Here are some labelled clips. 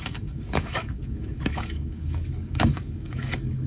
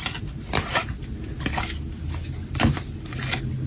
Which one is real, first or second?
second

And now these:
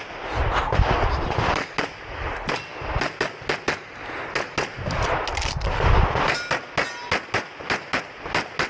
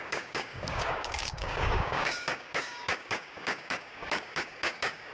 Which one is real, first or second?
first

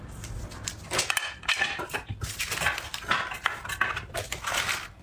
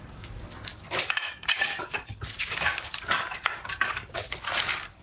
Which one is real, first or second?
first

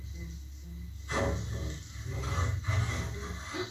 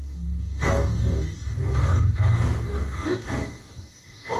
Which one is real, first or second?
first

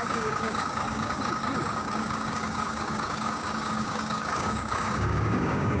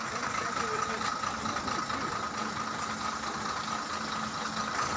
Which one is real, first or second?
second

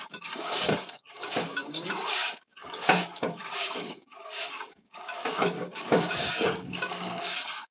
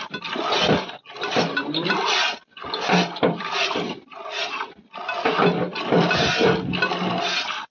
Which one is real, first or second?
second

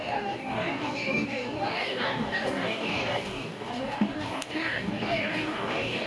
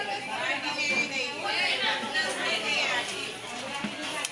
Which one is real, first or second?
second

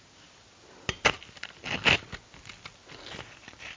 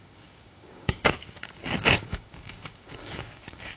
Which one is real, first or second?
first